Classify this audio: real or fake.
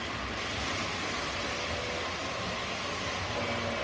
real